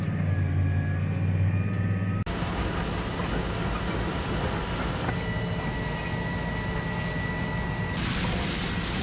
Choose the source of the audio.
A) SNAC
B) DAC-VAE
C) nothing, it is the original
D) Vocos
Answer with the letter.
C